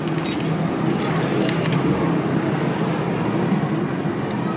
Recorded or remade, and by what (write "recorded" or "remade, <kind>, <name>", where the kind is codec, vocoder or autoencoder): recorded